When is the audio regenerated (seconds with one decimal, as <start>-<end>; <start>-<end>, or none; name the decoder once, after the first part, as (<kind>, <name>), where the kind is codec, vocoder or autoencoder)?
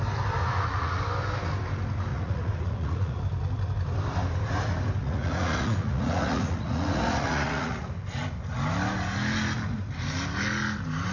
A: 0.4-1.0 (vocoder, Vocos); 2.1-3.2; 5.0-7.9